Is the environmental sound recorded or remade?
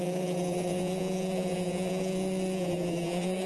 remade